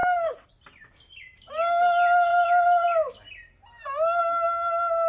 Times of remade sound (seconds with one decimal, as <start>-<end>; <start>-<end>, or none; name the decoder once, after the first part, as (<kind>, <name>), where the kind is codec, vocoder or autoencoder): 0.0-0.5 (codec, DAC)